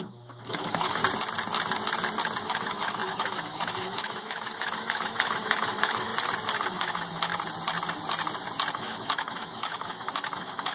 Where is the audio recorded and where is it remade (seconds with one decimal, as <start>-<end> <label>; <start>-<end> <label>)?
0.0-1.0 remade; 1.0-2.4 recorded; 2.4-6.1 remade; 6.1-6.7 recorded; 6.7-7.3 remade; 7.3-8.7 recorded; 8.7-10.7 remade